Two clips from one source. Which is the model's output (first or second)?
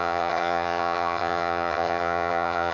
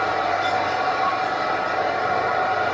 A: first